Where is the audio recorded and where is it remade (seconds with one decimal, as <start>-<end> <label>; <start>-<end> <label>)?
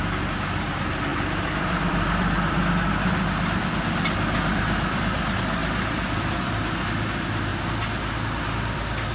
0.0-1.1 recorded; 1.1-5.0 remade; 5.0-5.6 recorded; 5.6-6.5 remade; 6.5-9.1 recorded